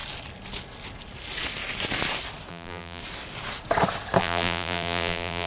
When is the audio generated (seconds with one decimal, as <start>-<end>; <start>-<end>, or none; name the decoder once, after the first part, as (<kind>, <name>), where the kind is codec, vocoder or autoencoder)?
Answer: 2.5-3.0 (vocoder, BigVGAN v2); 4.2-5.5